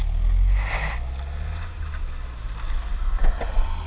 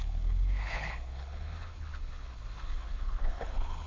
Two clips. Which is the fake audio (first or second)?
second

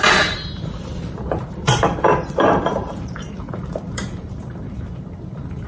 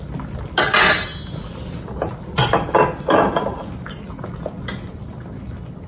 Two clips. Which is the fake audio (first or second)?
first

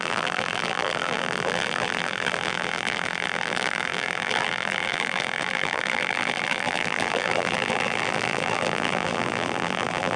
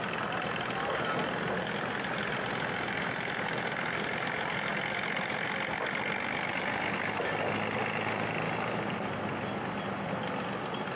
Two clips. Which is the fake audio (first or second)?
first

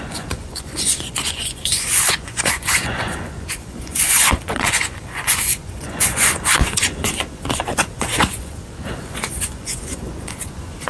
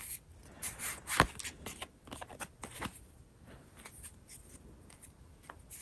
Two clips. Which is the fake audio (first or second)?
first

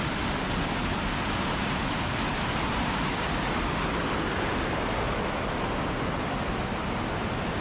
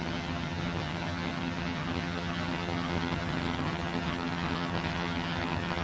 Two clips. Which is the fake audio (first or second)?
second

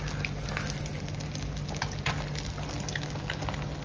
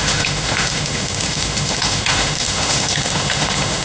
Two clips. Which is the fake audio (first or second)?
second